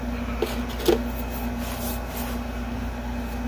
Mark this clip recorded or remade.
recorded